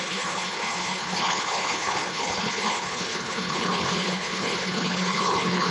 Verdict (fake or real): fake